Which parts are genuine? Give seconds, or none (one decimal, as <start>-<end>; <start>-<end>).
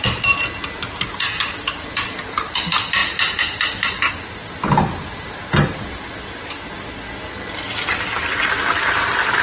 0.0-9.4